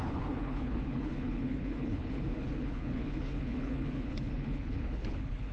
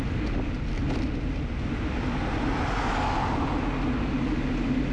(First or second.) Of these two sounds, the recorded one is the second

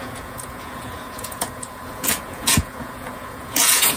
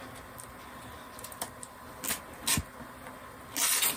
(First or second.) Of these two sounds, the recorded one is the second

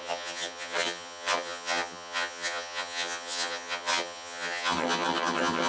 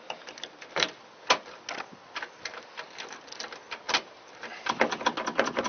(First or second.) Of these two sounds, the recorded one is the second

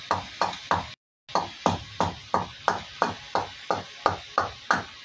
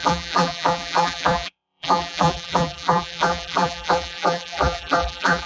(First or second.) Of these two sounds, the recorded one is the first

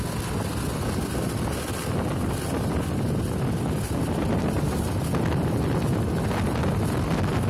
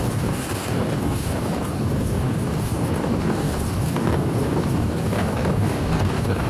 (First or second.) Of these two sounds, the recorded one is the first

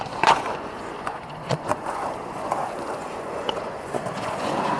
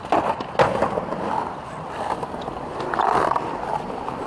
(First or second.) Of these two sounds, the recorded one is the second